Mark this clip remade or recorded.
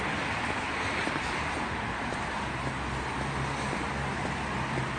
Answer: recorded